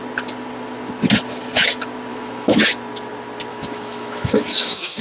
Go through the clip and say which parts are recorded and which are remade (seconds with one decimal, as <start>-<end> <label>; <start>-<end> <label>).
0.0-2.1 recorded; 2.1-2.7 remade; 2.7-3.5 recorded; 3.5-5.0 remade